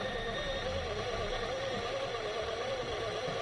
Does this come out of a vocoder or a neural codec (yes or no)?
no